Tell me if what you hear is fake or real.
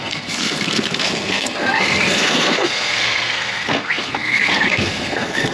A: fake